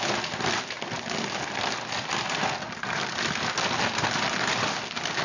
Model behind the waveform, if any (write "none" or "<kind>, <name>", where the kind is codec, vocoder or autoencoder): none